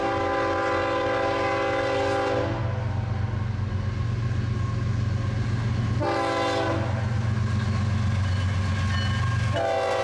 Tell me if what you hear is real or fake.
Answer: real